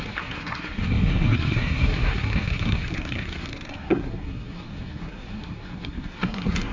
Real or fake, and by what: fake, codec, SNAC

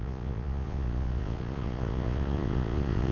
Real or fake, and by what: fake, vocoder, Vocos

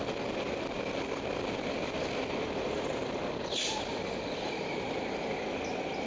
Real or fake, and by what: real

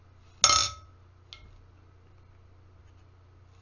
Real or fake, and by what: real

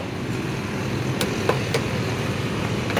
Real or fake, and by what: real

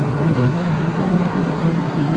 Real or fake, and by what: fake, codec, SNAC